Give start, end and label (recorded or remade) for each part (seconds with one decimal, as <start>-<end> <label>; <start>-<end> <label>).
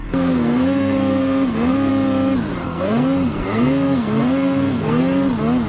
0.0-1.9 remade; 1.9-2.6 recorded; 2.6-5.0 remade; 5.0-5.7 recorded